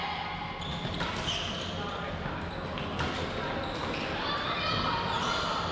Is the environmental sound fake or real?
real